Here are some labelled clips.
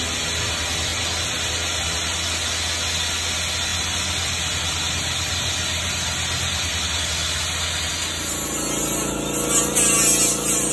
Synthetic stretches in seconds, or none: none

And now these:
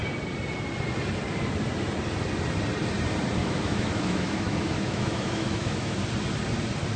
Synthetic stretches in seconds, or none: 3.4-6.0 (autoencoder, DAC-VAE)

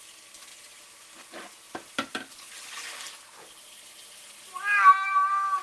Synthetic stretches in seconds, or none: none

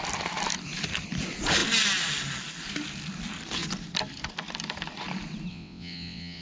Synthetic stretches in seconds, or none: 5.5-6.4 (vocoder, WaveNeXt)

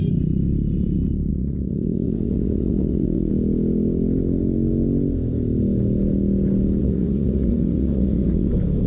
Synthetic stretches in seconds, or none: 1.3-3.3 (vocoder, Vocos); 6.8-8.5